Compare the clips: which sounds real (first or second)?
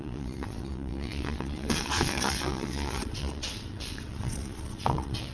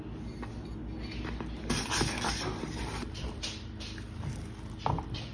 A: second